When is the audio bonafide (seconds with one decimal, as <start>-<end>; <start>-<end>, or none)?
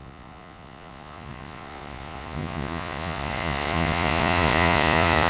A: none